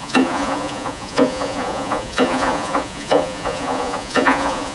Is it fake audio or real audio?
fake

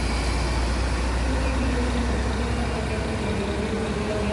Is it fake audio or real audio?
real